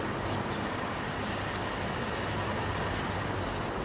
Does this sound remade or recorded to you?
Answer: recorded